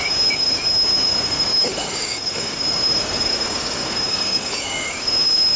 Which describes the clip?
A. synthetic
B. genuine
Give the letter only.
A